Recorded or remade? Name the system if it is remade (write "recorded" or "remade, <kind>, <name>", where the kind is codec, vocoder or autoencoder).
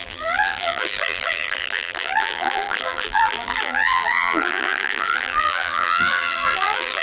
remade, vocoder, BigVGAN v2